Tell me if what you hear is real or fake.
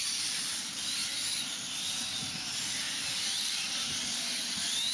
real